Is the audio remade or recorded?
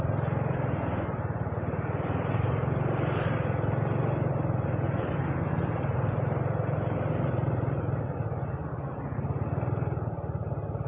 recorded